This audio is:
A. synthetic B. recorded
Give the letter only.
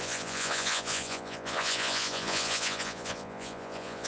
A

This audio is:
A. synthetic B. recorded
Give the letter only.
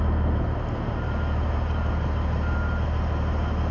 B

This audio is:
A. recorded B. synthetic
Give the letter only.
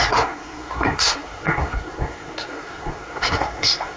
B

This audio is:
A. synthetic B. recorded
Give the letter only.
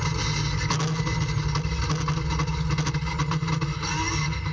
B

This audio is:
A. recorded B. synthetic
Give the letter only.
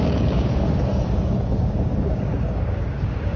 B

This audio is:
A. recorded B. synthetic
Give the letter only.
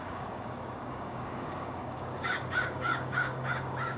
B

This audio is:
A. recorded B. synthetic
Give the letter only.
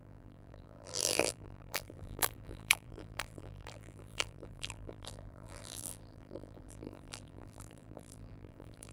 B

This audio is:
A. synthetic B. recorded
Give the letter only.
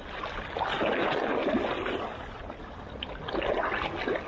B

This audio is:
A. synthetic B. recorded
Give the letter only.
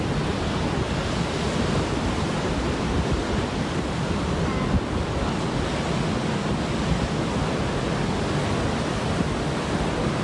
B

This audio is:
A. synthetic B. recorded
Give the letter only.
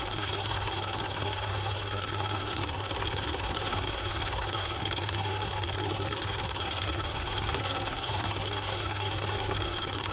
A